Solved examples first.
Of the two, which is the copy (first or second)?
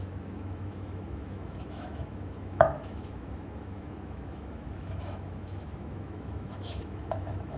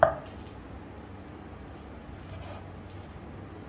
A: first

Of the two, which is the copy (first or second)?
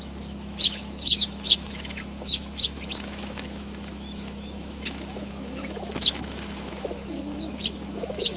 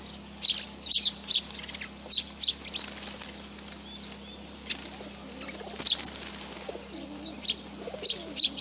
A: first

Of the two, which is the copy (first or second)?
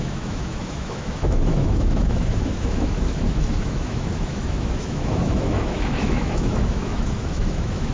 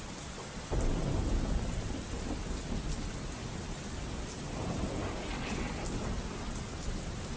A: first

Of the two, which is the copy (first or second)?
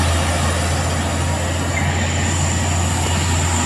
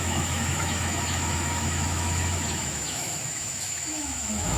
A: second